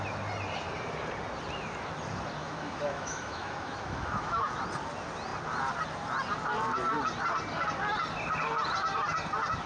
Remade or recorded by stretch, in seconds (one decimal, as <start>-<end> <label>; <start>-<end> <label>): 0.0-2.4 recorded; 2.4-4.4 remade; 4.4-9.7 recorded